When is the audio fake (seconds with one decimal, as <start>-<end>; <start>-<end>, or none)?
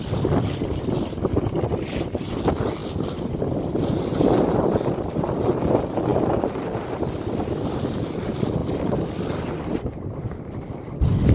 2.8-3.4; 8.6-9.6